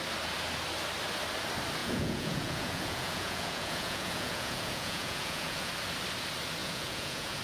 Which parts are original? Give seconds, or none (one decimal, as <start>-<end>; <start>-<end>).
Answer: 0.0-1.8; 5.7-6.6